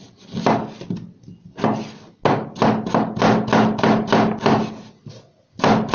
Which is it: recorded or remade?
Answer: recorded